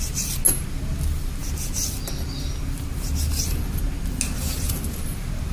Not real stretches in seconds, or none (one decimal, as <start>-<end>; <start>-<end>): none